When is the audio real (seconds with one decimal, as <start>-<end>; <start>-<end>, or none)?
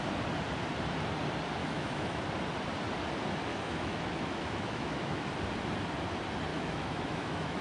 0.0-1.6; 2.2-3.5; 5.3-6.5